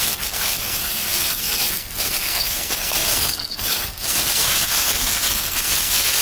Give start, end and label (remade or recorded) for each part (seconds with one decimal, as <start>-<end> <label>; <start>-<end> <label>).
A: 0.0-6.2 remade